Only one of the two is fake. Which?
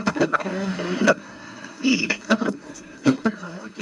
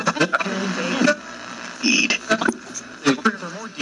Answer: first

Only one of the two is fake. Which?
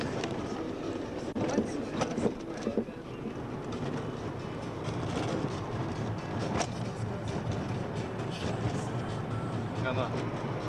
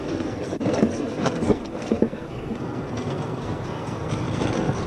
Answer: second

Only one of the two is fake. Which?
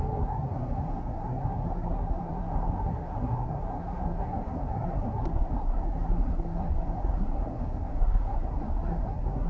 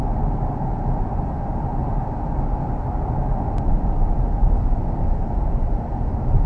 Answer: first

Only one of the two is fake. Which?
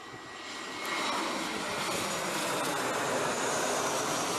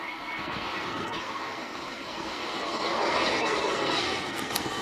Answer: second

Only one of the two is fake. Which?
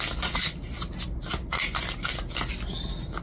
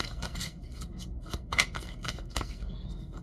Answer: second